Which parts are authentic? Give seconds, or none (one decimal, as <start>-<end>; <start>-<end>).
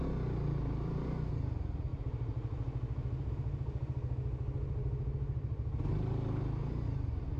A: 0.0-7.4